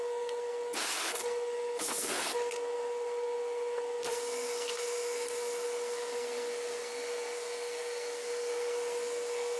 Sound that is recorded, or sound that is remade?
remade